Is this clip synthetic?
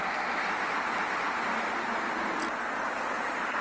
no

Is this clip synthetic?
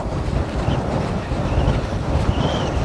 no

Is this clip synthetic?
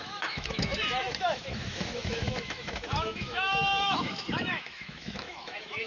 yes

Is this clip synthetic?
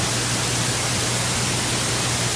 no